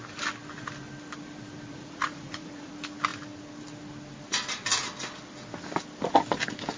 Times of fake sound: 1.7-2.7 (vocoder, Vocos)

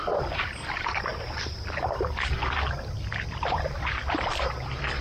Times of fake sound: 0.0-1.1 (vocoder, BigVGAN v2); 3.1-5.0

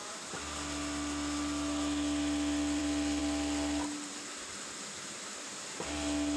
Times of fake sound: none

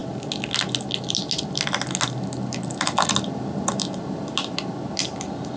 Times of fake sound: none

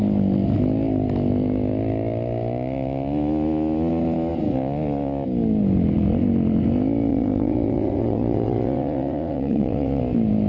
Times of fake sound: 7.1-10.0 (vocoder, WaveNeXt)

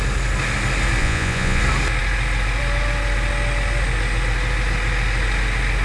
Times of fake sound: 1.0-1.6 (vocoder, Vocos)

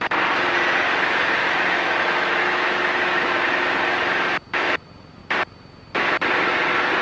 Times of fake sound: 1.4-3.3 (autoencoder, DAC-VAE)

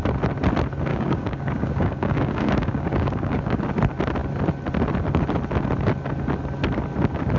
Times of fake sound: 0.9-3.6 (codec, DAC)